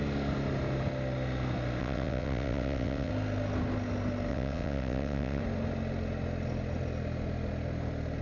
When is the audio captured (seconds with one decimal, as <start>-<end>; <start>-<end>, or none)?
0.0-1.8; 3.1-4.3; 5.4-8.2